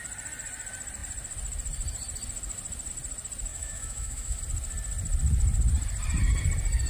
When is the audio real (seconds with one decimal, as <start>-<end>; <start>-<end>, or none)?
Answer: 0.0-3.5; 4.4-6.9